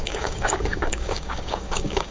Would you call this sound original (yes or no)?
no